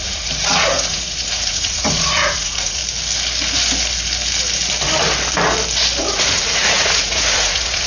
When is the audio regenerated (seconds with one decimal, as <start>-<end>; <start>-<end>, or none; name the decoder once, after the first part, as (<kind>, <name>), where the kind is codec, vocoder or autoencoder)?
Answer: 0.0-2.8 (vocoder, Vocos); 6.0-7.9